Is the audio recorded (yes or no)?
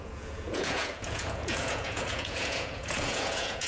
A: no